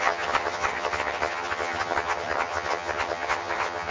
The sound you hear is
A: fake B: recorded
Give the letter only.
A